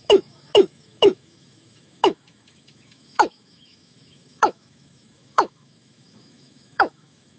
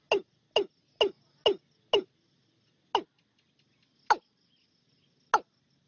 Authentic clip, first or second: second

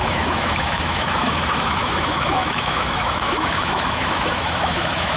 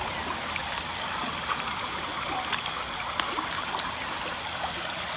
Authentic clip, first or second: second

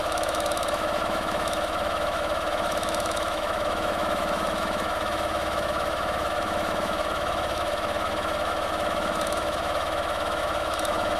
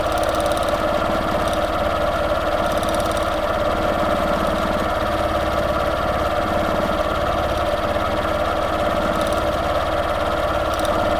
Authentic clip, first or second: second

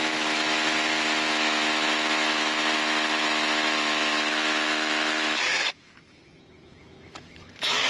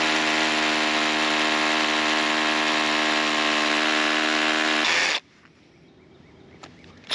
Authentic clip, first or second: second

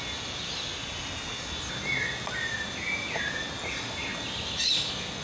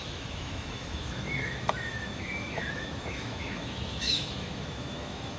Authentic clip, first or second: first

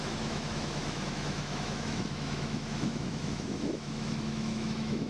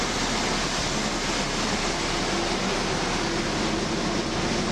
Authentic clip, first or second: second